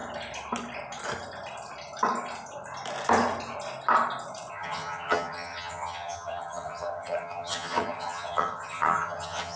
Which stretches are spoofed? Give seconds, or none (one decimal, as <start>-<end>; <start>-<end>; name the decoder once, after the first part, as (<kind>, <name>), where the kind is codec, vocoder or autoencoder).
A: 4.5-9.6 (vocoder, HiFi-GAN)